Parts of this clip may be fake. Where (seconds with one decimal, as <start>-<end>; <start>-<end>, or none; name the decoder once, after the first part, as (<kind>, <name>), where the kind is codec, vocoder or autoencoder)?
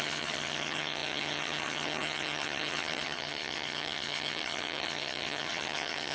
0.0-6.1 (vocoder, HiFi-GAN)